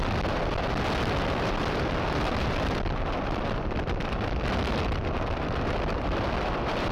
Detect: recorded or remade remade